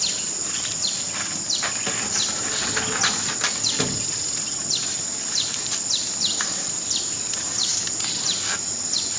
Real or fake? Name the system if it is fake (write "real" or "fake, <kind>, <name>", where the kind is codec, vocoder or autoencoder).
real